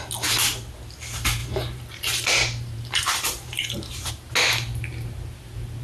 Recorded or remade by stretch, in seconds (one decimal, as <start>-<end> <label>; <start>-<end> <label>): 0.0-1.4 recorded; 1.4-4.1 remade; 4.1-5.8 recorded